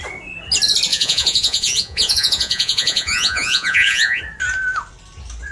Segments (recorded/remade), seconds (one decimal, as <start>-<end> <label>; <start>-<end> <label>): 0.0-0.9 recorded; 0.9-4.2 remade; 4.2-5.5 recorded